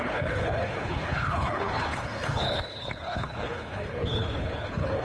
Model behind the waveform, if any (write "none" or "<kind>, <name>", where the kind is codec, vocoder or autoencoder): codec, HILCodec